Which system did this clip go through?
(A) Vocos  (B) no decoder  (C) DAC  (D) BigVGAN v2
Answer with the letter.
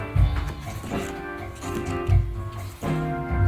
B